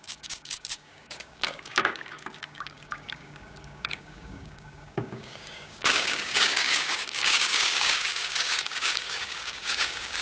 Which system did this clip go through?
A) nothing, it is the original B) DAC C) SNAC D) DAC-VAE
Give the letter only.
B